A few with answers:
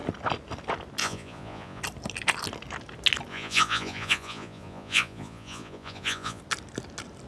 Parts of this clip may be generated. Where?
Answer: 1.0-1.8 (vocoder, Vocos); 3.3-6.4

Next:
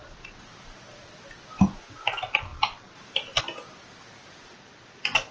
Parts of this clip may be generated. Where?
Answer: none